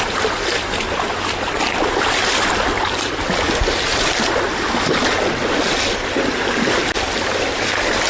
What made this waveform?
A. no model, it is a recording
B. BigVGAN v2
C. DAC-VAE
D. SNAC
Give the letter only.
A